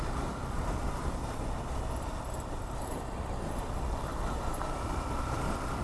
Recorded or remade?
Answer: remade